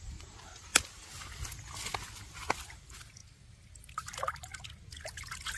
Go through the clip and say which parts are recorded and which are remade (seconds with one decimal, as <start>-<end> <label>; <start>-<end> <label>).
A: 0.0-0.7 remade; 0.7-2.6 recorded; 2.6-3.2 remade; 3.2-3.8 recorded; 3.8-4.5 remade; 4.5-5.6 recorded